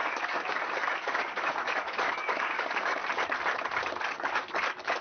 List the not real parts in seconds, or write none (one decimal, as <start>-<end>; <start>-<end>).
0.0-3.0; 4.1-5.0